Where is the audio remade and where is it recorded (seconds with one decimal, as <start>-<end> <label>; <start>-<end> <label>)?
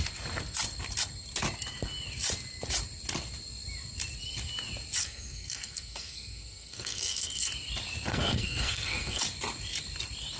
0.0-5.0 recorded; 5.0-7.5 remade; 7.5-8.1 recorded; 8.1-9.2 remade; 9.2-10.4 recorded